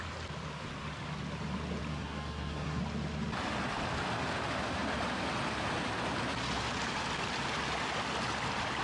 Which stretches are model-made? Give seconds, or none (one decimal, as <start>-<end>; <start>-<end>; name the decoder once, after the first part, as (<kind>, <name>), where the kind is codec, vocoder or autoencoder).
1.9-2.8 (codec, SNAC)